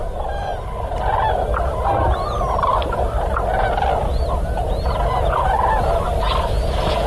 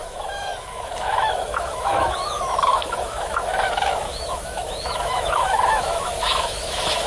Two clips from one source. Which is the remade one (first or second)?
second